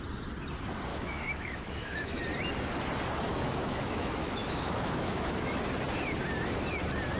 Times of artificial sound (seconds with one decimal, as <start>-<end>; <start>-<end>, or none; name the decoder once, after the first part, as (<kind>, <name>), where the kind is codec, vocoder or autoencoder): 0.9-2.2 (autoencoder, DAC-VAE); 3.3-5.6